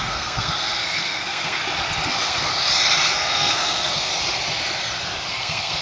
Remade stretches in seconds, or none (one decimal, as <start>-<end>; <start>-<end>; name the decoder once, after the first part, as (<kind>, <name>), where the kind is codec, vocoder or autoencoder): 0.0-1.6 (codec, SNAC); 2.1-2.5; 3.1-4.1; 5.3-5.8